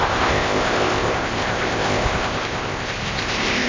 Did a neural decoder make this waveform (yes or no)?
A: yes